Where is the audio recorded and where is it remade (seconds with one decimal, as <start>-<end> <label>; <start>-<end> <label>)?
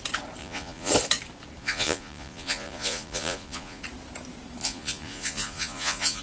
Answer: 0.0-0.4 recorded; 0.4-0.9 remade; 0.9-1.6 recorded; 1.6-3.8 remade; 3.8-4.6 recorded; 4.6-6.2 remade